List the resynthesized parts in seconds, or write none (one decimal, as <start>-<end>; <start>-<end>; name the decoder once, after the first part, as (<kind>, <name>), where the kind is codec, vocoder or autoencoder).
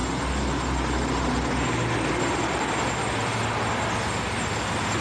none